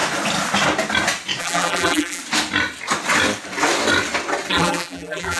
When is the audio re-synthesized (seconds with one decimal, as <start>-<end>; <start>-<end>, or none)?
1.4-2.2; 4.5-5.4